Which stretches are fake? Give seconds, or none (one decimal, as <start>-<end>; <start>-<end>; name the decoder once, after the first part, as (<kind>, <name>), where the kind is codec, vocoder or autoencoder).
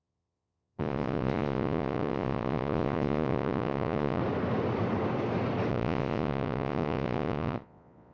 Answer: 0.0-4.2 (vocoder, Vocos); 5.7-8.1